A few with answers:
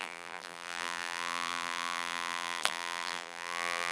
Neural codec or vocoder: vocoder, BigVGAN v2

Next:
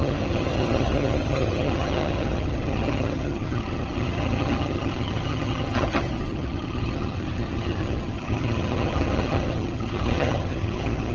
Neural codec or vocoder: vocoder, HiFi-GAN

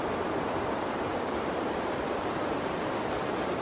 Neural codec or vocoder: none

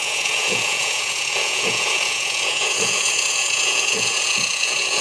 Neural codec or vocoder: vocoder, Vocos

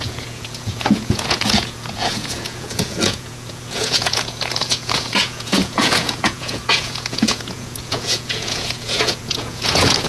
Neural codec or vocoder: vocoder, Vocos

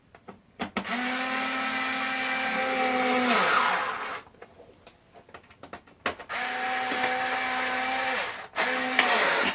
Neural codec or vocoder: none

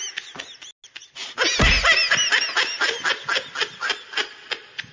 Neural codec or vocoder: none